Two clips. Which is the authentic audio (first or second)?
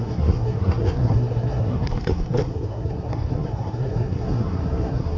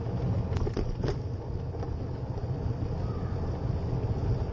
second